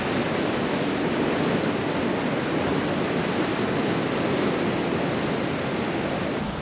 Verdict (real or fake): real